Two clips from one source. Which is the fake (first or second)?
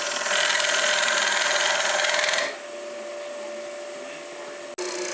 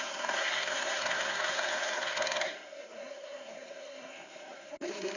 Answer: second